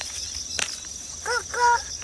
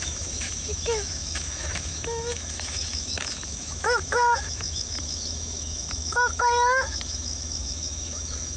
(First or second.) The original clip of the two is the first